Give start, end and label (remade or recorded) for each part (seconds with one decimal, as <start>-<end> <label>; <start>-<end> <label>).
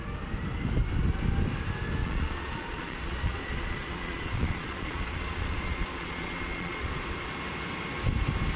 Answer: 0.0-2.0 recorded; 2.0-7.0 remade; 7.0-8.6 recorded